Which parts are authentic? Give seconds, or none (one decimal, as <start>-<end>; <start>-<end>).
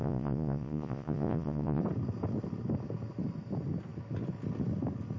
1.8-5.2